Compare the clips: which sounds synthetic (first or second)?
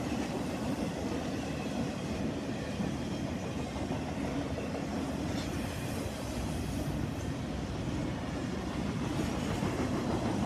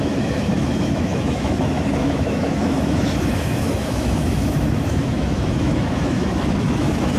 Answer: second